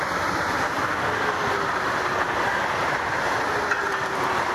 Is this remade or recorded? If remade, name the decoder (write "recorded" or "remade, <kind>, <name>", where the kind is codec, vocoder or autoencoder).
recorded